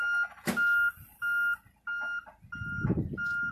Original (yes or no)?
yes